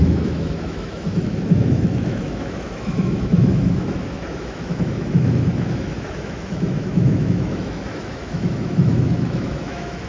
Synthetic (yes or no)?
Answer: yes